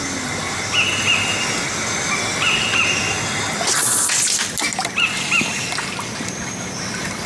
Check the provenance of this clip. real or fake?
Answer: real